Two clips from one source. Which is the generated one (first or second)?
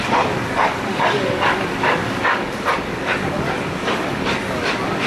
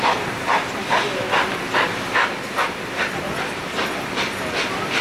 first